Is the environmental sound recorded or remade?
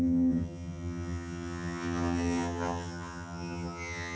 remade